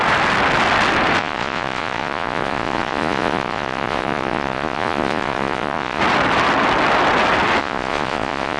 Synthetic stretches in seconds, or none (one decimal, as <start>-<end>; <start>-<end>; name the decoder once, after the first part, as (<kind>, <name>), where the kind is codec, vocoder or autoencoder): 1.2-6.0 (vocoder, Vocos); 7.6-8.6